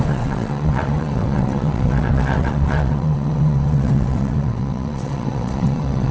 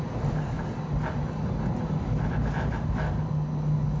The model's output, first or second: first